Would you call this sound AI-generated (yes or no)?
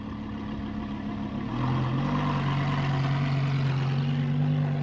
no